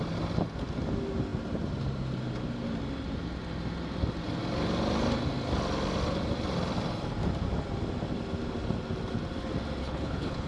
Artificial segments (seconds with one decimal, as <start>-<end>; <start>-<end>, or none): 9.8-10.5